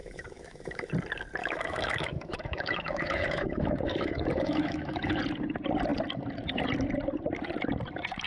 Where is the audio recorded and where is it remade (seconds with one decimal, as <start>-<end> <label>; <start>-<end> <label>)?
0.0-0.9 remade; 0.9-1.4 recorded; 1.4-5.2 remade; 5.2-8.3 recorded